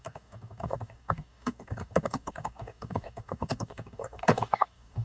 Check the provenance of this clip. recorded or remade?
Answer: remade